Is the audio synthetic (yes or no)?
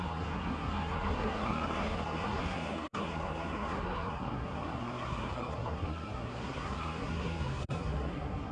yes